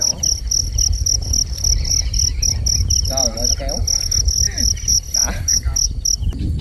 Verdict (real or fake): real